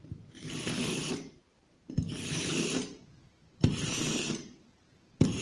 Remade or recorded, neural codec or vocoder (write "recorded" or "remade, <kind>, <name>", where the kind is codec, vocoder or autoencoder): remade, vocoder, BigVGAN v2